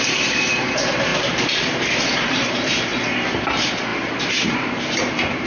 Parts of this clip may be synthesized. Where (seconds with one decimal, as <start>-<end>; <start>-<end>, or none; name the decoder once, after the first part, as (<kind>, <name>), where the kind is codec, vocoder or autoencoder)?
0.0-2.9 (vocoder, BigVGAN v2); 3.4-5.5